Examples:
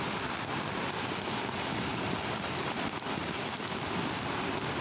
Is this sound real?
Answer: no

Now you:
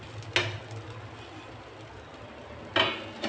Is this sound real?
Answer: yes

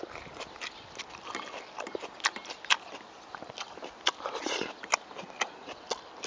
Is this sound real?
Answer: yes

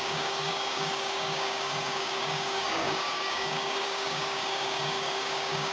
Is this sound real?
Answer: no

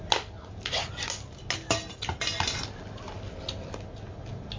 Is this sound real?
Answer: yes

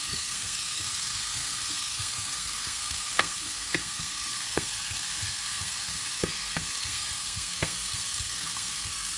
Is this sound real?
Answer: no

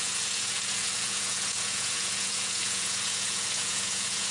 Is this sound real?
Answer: no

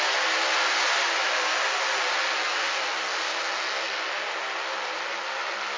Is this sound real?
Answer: yes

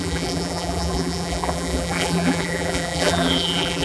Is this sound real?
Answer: no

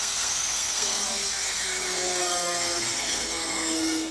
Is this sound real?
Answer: no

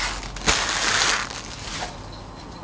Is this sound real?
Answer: yes